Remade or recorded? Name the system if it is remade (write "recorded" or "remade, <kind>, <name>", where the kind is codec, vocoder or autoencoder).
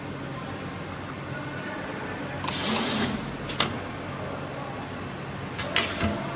recorded